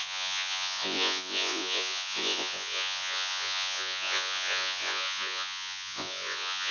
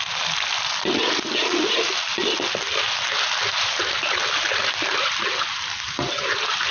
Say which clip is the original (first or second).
second